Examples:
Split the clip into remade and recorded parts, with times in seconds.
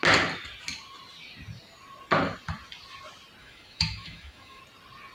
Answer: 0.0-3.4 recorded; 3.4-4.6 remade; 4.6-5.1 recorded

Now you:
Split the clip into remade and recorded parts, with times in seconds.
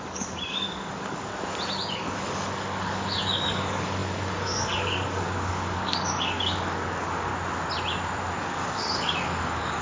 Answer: 0.0-1.3 remade; 1.3-1.9 recorded; 1.9-7.3 remade; 7.3-8.4 recorded; 8.4-9.8 remade